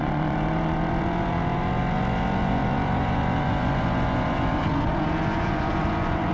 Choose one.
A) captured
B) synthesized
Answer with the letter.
B